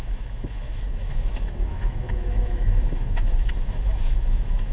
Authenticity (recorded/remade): remade